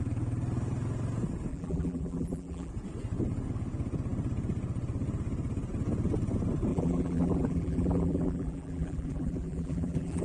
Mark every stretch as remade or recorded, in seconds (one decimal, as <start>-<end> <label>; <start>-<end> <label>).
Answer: 0.0-1.5 recorded; 1.5-2.7 remade; 2.7-6.7 recorded; 6.7-10.2 remade